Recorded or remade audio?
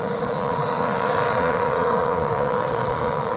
remade